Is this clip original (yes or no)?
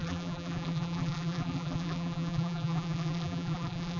no